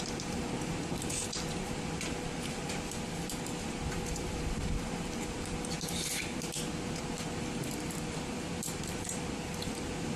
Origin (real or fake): fake